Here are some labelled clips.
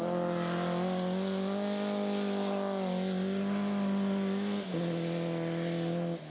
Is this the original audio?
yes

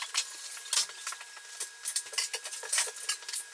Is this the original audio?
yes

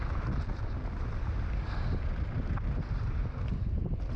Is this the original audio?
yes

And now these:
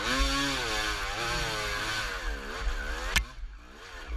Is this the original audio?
yes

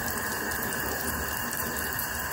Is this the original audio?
no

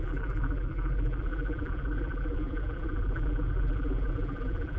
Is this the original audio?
no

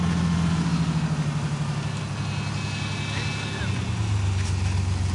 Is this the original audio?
yes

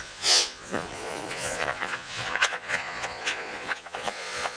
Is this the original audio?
no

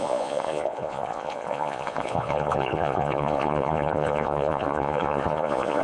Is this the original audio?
no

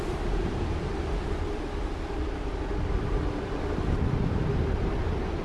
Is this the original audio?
yes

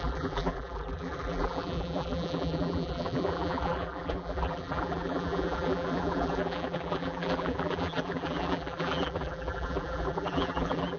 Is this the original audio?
no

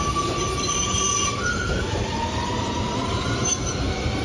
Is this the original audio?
yes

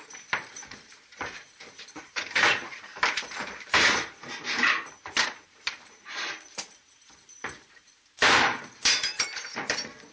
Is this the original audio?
no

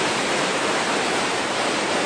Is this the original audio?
no